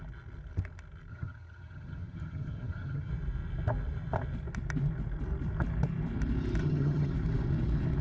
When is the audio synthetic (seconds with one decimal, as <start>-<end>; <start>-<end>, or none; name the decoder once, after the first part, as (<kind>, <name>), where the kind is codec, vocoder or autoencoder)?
1.1-3.1 (vocoder, HiFi-GAN); 6.6-7.1